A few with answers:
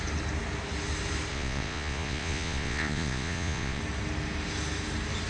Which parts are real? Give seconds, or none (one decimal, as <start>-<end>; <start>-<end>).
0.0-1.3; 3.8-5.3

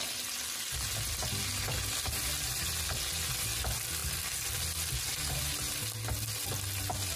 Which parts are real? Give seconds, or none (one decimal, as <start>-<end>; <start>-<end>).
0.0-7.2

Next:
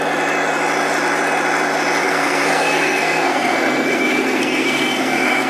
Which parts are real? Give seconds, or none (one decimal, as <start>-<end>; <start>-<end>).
0.0-2.0